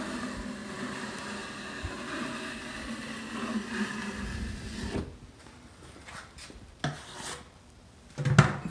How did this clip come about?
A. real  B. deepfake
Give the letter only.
A